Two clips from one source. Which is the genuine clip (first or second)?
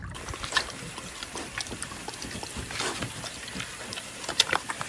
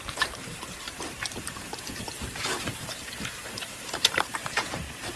first